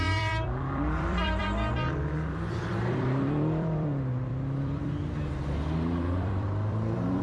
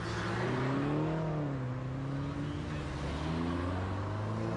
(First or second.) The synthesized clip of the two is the first